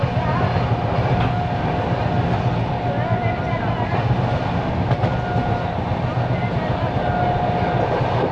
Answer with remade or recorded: recorded